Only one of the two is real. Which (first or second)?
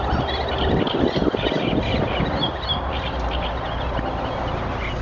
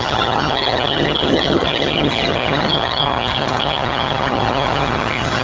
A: first